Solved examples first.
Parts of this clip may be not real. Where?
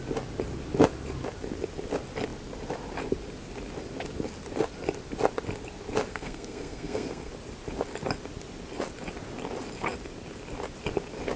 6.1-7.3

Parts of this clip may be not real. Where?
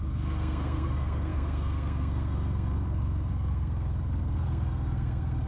0.0-5.5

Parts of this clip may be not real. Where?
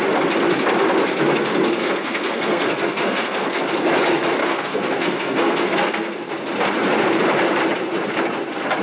1.8-3.6; 4.4-6.3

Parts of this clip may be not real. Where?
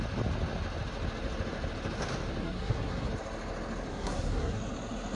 2.4-3.1; 3.9-4.6